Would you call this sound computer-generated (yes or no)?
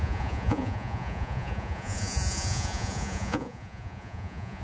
yes